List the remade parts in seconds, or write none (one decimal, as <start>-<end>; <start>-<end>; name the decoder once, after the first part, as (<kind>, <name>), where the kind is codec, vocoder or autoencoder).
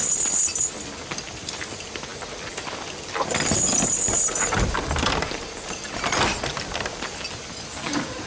none